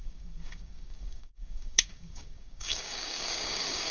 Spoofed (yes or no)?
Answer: yes